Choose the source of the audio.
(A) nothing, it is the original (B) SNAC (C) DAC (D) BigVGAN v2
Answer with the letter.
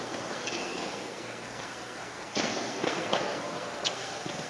B